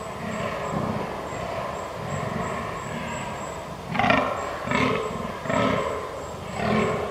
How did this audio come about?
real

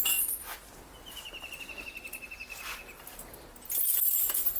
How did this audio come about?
real